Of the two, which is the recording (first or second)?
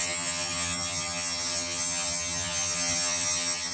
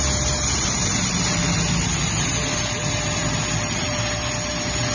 second